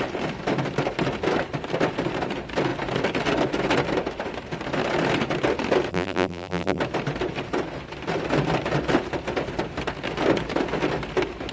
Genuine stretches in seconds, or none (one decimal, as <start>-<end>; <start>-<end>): 0.0-5.9; 6.8-11.5